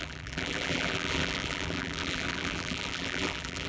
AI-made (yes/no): yes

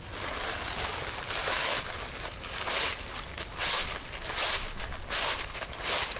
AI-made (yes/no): no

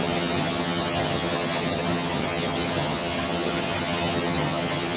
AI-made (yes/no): yes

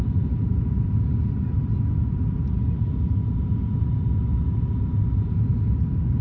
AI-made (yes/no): no